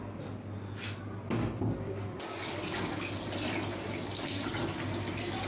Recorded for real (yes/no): yes